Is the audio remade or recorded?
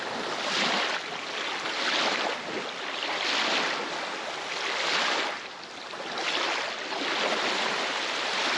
recorded